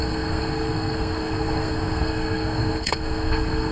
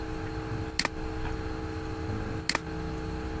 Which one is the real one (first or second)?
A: second